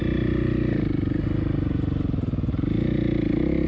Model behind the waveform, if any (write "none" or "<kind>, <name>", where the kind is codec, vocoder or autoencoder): none